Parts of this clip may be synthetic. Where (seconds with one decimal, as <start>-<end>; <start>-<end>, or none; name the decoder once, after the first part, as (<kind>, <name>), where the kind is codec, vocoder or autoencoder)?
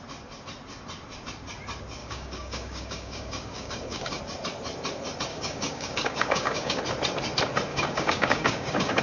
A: 2.0-4.2 (codec, DAC); 5.3-6.8; 7.7-9.0